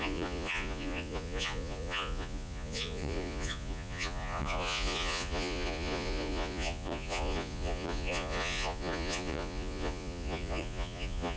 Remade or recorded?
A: remade